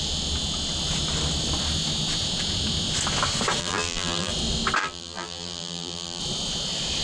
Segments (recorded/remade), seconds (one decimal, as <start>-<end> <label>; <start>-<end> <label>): 0.0-3.6 recorded; 3.6-4.3 remade; 4.3-4.8 recorded; 4.8-6.2 remade; 6.2-7.0 recorded